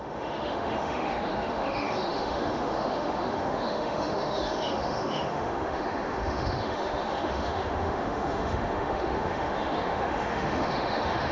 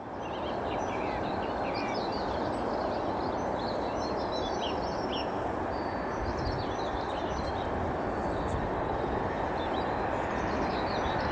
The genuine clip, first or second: second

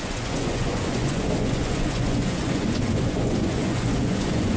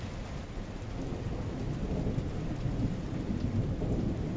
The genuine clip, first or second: second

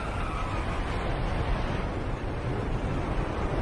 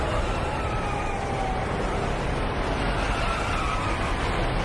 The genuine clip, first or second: second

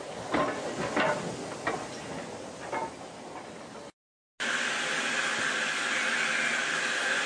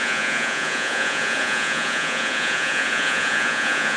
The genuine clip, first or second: first